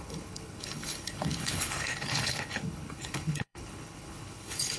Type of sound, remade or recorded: remade